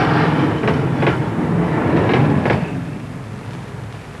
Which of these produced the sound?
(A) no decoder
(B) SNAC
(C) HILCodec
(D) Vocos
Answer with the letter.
A